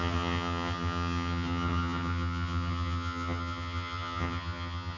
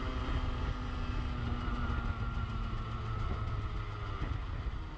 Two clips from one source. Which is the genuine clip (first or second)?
second